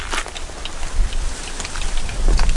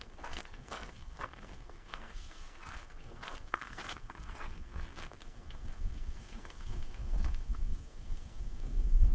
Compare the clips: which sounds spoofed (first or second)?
second